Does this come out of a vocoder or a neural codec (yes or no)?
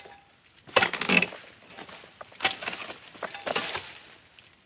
no